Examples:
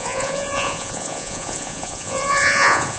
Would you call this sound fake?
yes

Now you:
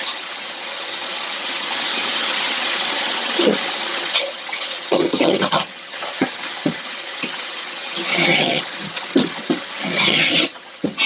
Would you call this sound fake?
yes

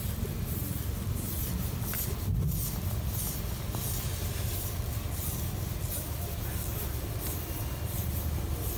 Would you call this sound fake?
no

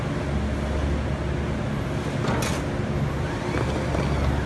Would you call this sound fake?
no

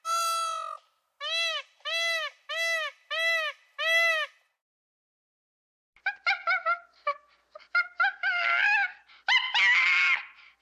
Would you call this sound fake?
no